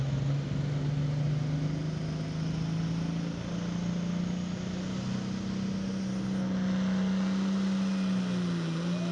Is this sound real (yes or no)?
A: yes